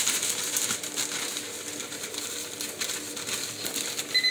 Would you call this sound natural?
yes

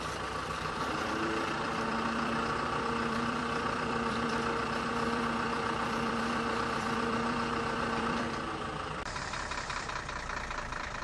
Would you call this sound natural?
no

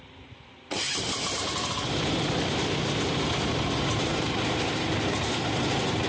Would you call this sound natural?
no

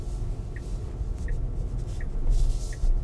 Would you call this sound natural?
yes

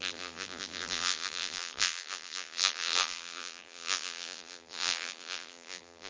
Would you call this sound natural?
no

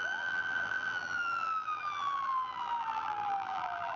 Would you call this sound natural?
no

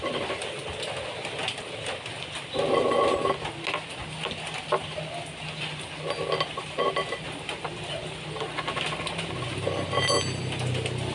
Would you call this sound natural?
yes